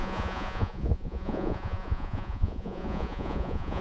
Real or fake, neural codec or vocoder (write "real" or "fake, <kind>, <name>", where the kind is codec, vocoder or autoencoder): fake, vocoder, Vocos